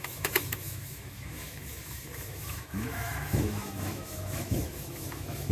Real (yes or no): no